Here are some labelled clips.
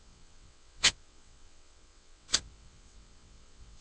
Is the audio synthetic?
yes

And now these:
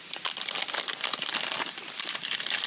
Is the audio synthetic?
no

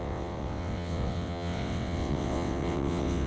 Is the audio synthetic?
yes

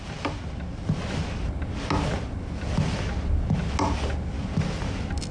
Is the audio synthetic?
no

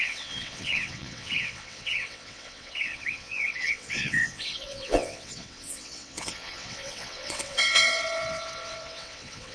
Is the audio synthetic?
yes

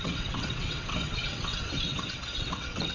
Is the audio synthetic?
yes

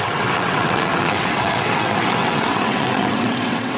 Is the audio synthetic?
yes